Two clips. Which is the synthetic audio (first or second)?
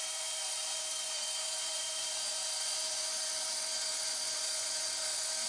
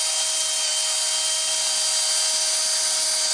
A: first